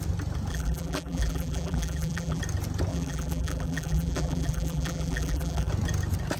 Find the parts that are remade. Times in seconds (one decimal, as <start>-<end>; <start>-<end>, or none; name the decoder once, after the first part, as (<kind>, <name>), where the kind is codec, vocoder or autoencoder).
0.5-2.4 (vocoder, BigVGAN v2); 2.9-5.7